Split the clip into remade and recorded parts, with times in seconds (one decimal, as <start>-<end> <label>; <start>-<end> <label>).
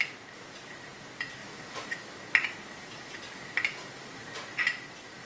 0.0-5.3 recorded